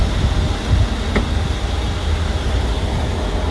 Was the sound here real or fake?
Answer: real